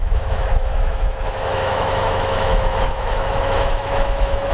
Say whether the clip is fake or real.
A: fake